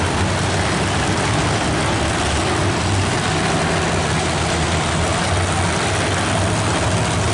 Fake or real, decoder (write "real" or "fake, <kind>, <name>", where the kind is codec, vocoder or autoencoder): real